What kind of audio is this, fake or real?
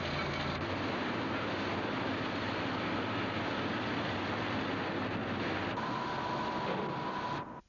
real